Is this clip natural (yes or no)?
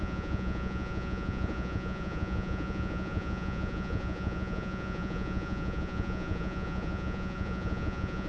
no